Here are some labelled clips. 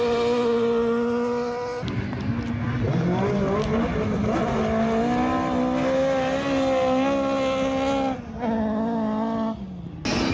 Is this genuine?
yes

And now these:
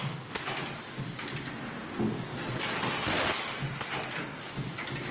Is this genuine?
yes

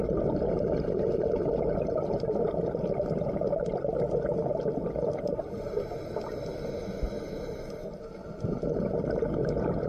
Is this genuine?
yes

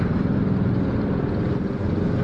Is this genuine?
yes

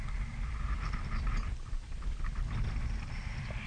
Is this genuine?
yes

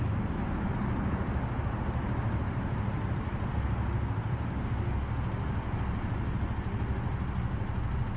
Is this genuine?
yes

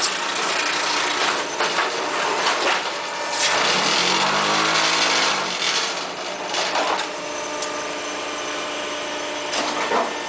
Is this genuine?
yes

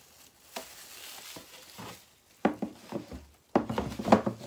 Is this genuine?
yes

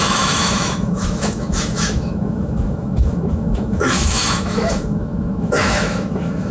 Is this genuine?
no